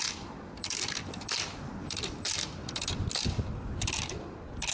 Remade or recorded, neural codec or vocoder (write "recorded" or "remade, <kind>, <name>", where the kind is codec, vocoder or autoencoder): remade, vocoder, BigVGAN v2